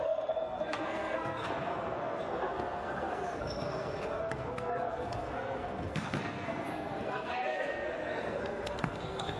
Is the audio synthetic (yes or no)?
yes